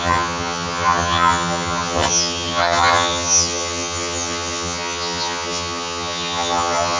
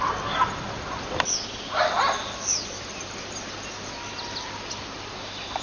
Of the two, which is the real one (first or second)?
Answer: second